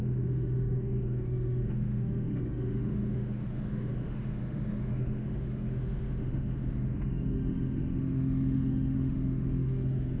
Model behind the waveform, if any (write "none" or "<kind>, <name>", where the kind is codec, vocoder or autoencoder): autoencoder, DAC-VAE